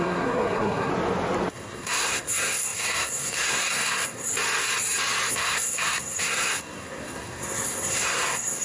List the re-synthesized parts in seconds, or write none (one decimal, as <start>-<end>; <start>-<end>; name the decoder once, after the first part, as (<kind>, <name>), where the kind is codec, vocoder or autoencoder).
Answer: 0.0-0.9 (codec, SNAC); 1.5-4.3; 5.3-8.6